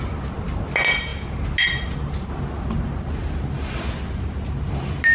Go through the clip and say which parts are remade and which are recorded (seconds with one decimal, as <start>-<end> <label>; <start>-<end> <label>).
0.0-5.1 recorded